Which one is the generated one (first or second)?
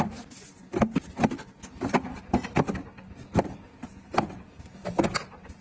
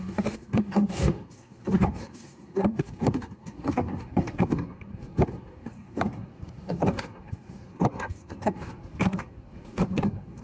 second